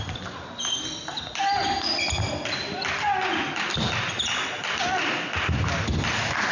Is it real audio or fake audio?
real